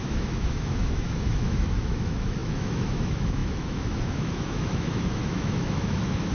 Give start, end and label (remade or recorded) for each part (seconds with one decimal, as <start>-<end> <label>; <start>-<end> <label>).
0.0-6.3 remade